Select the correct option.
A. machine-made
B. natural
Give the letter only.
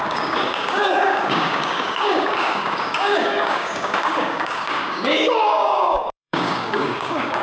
A